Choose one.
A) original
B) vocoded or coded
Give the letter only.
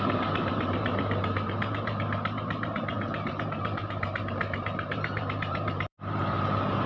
B